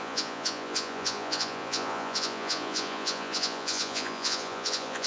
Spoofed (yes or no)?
yes